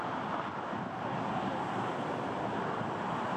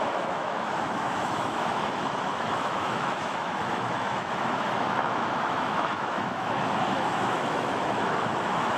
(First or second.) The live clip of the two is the first